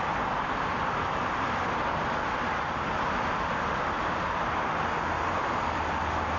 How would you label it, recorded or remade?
recorded